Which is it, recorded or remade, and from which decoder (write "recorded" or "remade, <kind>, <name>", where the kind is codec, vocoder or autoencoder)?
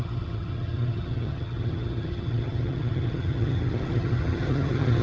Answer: remade, vocoder, HiFi-GAN